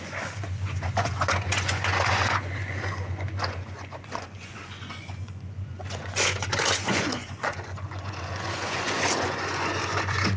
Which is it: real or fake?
fake